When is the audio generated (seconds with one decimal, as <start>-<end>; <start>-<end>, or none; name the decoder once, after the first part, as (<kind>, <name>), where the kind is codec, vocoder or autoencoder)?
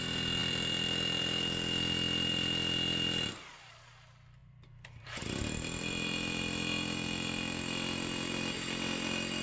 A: 0.4-3.9 (vocoder, BigVGAN v2); 4.4-5.9